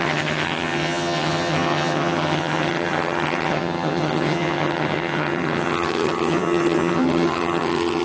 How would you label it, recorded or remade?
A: remade